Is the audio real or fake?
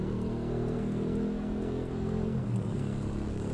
fake